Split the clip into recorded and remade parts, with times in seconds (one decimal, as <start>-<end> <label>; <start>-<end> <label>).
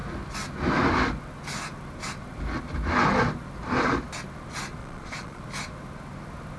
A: 0.0-4.8 recorded; 4.8-5.4 remade; 5.4-6.6 recorded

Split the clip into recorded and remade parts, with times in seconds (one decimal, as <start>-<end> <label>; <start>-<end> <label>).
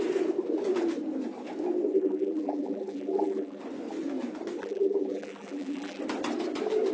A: 0.0-1.9 recorded; 1.9-3.6 remade; 3.6-4.6 recorded; 4.6-6.0 remade; 6.0-6.9 recorded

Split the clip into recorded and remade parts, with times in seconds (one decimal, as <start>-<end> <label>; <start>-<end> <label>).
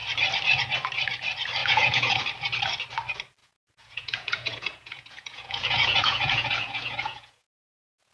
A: 0.0-1.6 recorded; 1.6-2.2 remade; 2.2-3.4 recorded; 3.4-8.1 remade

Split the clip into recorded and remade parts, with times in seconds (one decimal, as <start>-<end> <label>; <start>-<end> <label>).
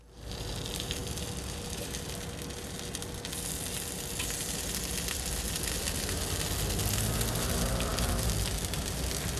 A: 0.0-9.4 recorded